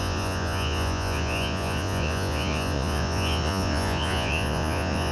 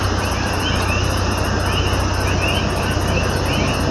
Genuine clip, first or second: second